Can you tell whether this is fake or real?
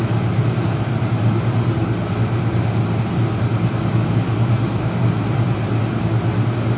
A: real